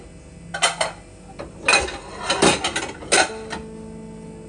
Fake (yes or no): no